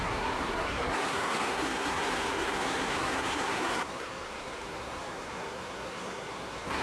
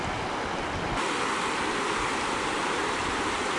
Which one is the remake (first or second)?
first